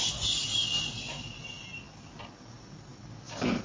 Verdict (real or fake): real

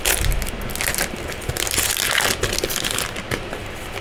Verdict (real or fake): real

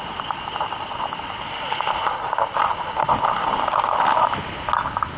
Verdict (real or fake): real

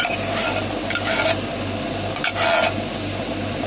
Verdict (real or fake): real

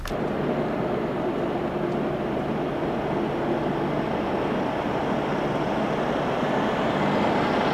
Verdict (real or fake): real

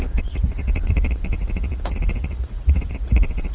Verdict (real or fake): fake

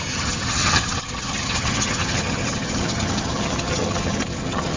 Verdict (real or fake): fake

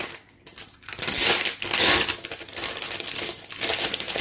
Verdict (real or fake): real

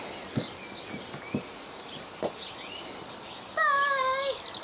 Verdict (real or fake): real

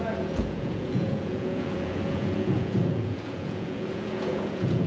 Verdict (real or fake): fake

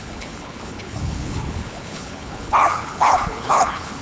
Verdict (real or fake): fake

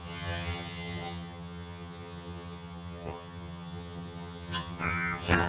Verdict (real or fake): fake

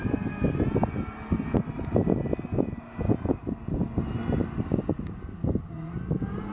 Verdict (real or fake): real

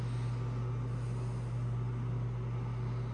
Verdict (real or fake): real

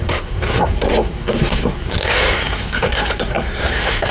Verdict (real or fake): fake